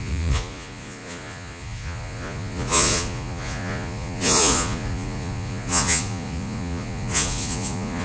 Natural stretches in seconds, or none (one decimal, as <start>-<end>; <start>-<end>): none